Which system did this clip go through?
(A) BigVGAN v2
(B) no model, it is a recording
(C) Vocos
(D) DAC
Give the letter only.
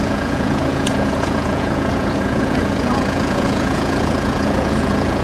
C